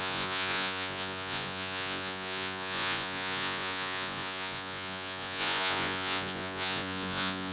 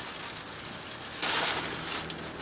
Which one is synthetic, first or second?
first